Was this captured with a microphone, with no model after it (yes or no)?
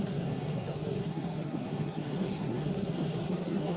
no